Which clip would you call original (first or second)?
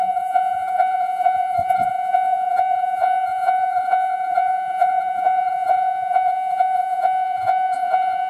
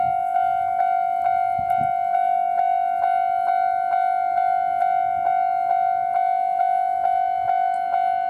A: second